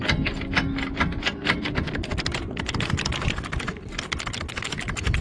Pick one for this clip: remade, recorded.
recorded